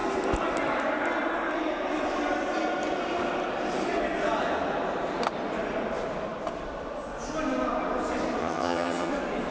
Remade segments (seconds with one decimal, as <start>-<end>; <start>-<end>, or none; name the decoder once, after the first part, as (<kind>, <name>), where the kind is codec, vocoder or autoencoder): 8.4-9.1 (vocoder, HiFi-GAN)